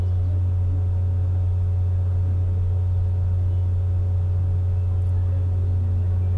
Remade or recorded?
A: recorded